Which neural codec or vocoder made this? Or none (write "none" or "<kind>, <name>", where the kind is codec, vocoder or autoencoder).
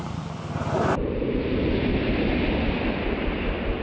none